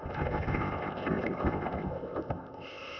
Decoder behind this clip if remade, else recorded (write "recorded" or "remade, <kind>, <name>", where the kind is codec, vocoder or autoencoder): remade, codec, ZipCodec